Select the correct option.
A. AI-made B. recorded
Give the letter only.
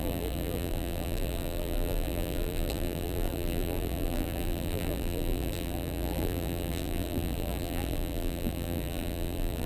A